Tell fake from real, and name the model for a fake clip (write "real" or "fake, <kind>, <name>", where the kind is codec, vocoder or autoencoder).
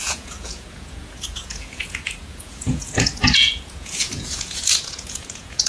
fake, vocoder, Vocos